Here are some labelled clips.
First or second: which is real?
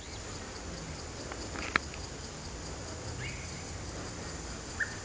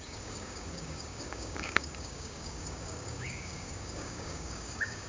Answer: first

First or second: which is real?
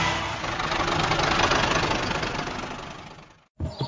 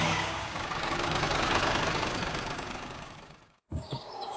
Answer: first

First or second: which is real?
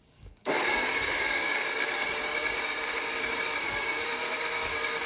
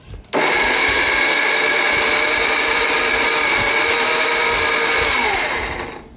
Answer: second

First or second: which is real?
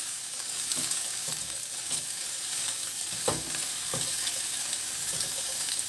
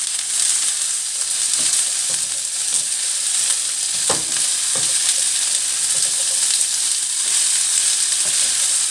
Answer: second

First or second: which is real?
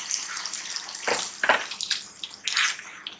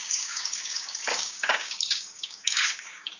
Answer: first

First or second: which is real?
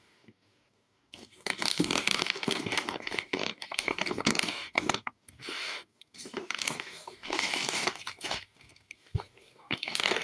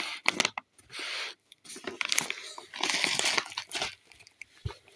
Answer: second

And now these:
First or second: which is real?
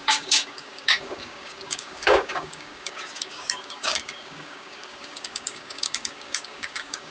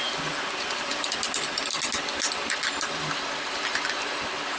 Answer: second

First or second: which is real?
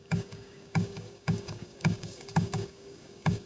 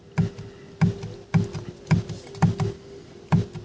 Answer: second